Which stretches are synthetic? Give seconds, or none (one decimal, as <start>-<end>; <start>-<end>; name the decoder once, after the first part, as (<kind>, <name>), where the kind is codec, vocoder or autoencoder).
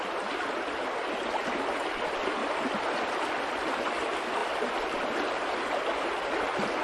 2.4-3.1 (vocoder, BigVGAN v2)